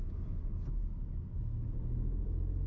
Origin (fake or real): real